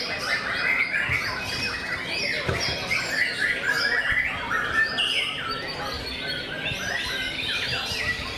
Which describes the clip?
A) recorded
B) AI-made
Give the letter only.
A